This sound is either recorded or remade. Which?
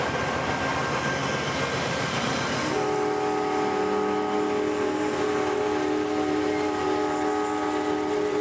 recorded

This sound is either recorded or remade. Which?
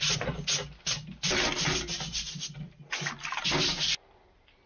recorded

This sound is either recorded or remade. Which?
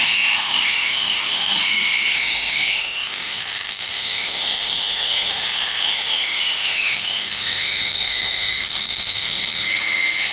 remade